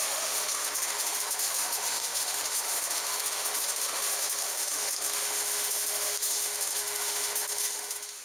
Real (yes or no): no